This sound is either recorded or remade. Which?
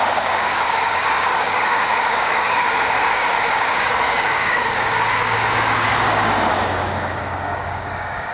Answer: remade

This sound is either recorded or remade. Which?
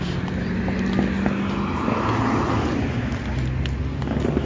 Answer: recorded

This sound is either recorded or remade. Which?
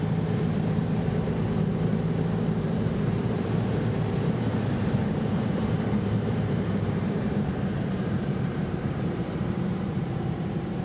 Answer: remade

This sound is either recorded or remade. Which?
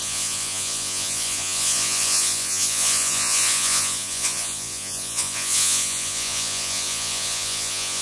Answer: remade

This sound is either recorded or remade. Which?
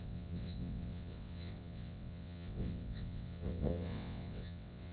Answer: remade